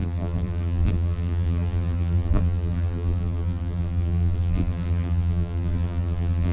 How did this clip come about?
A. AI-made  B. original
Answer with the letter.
A